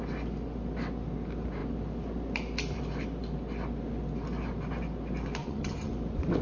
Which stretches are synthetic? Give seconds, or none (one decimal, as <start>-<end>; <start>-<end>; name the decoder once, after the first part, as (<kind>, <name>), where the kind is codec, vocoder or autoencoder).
5.4-5.9 (vocoder, HiFi-GAN)